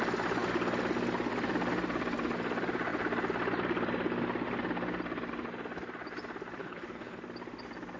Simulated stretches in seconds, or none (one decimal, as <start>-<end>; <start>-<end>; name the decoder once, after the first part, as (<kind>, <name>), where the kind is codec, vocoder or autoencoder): 6.6-7.2 (codec, HILCodec)